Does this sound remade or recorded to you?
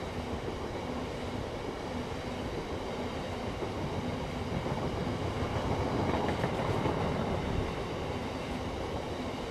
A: recorded